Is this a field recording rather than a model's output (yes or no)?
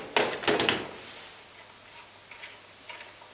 yes